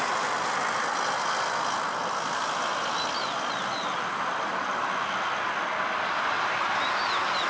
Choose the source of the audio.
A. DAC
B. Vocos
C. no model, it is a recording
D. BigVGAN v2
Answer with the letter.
C